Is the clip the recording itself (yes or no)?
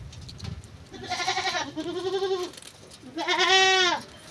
yes